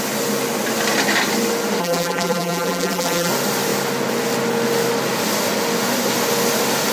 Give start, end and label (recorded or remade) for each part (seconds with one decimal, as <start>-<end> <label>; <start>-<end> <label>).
0.0-1.8 recorded; 1.8-3.3 remade; 3.3-6.9 recorded